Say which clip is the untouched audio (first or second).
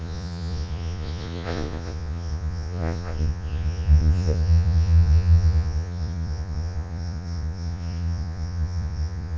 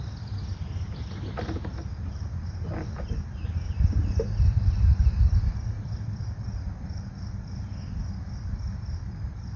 second